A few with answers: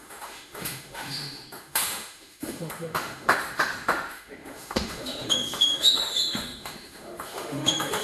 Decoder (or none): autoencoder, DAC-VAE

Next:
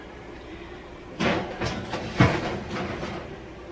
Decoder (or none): none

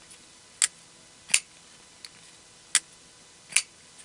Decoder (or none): none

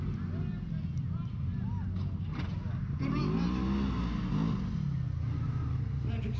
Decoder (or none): none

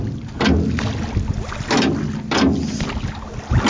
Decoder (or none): none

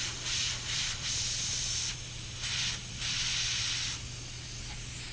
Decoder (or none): none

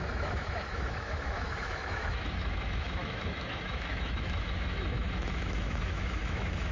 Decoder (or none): autoencoder, DAC-VAE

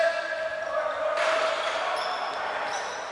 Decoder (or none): none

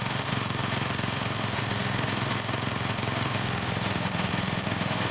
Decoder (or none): autoencoder, DAC-VAE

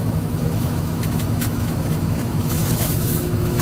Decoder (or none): autoencoder, DAC-VAE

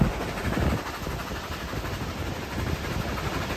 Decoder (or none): none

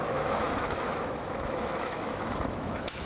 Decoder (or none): autoencoder, DAC-VAE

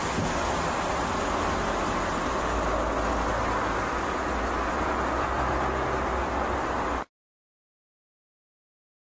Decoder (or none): none